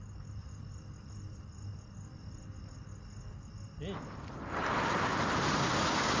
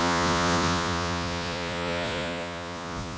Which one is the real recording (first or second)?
first